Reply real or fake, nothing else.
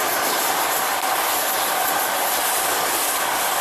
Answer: real